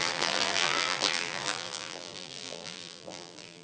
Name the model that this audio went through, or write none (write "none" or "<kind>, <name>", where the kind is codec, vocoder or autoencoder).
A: vocoder, BigVGAN v2